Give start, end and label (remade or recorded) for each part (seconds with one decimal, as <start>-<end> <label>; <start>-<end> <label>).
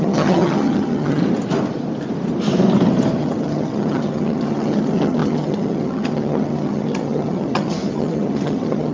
0.0-1.2 remade; 1.2-3.2 recorded; 3.2-8.9 remade